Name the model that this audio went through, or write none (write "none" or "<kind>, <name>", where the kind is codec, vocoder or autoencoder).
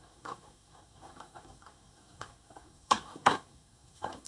codec, SNAC